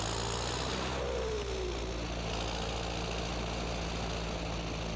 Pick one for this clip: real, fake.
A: real